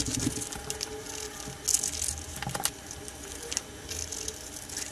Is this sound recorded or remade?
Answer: recorded